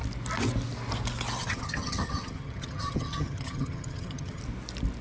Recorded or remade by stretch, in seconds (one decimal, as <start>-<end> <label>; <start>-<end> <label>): 0.0-1.4 recorded; 1.4-4.4 remade; 4.4-5.0 recorded